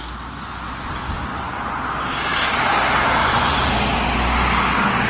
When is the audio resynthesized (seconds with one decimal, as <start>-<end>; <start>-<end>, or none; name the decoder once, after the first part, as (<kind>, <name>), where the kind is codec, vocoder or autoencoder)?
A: 1.3-1.8 (vocoder, Vocos); 3.2-3.7